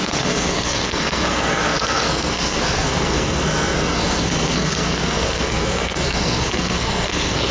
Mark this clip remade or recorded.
remade